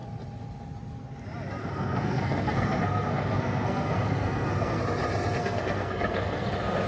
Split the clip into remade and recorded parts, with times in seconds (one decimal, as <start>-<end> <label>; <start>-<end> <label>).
0.0-1.6 recorded; 1.6-4.8 remade; 4.8-5.4 recorded; 5.4-6.5 remade; 6.5-6.9 recorded